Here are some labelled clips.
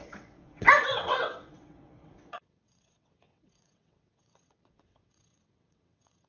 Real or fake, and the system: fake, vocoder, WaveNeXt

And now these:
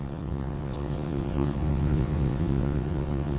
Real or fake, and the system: fake, vocoder, WaveNeXt